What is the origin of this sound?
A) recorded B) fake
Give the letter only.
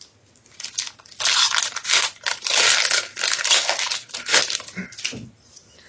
A